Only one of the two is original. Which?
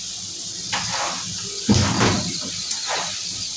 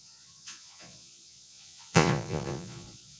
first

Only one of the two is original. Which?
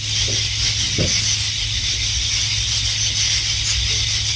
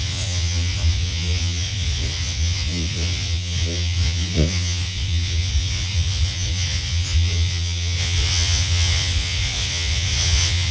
first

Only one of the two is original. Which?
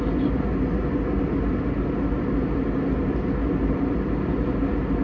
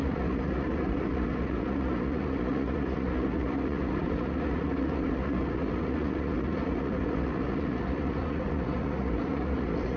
first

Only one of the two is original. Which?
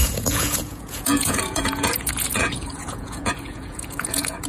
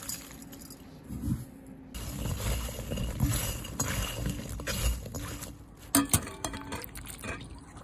second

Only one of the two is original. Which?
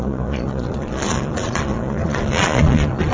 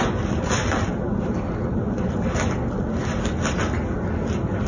second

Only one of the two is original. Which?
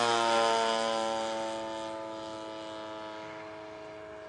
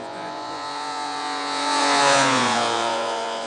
first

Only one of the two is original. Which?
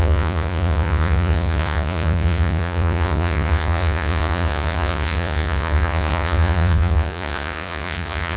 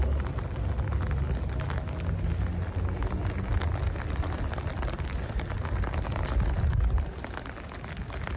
second